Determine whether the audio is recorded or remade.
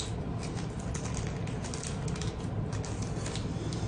recorded